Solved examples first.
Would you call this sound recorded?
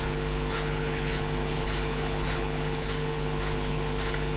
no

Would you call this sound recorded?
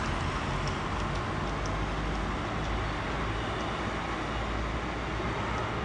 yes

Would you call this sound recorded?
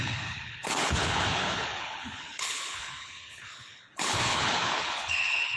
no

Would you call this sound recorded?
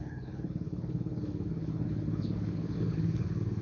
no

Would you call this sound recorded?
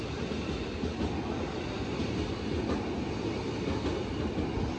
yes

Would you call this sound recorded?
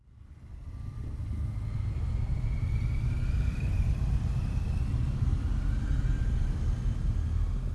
yes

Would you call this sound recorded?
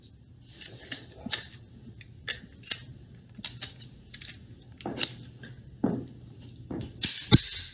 yes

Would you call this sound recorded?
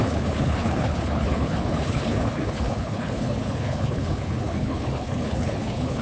no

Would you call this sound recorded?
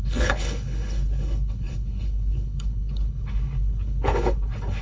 no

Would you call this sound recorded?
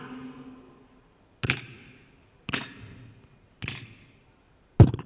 yes